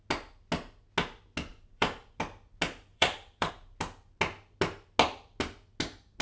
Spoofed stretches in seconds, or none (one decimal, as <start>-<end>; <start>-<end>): 1.5-2.2; 2.9-3.5